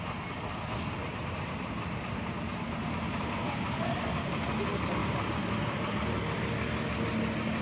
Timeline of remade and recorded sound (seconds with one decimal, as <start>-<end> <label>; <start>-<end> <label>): 0.0-1.0 recorded; 1.0-4.1 remade; 4.1-5.0 recorded; 5.0-6.2 remade; 6.2-7.6 recorded